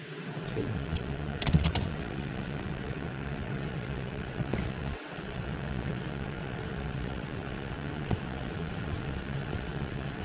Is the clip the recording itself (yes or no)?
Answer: no